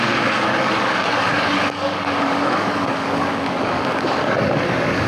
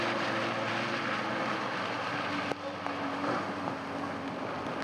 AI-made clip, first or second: first